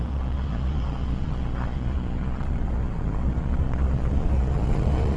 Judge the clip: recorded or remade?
remade